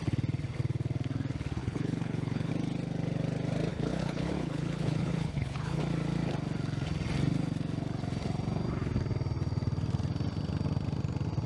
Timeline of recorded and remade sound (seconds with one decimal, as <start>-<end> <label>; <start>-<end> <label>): 0.0-1.6 recorded; 1.6-2.5 remade; 2.5-3.7 recorded; 3.7-5.8 remade; 5.8-11.5 recorded